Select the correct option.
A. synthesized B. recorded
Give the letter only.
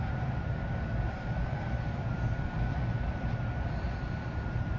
A